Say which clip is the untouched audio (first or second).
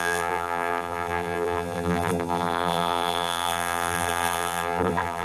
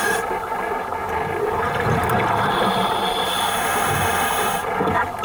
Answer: second